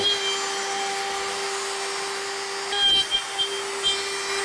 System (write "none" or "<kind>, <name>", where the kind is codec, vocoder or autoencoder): none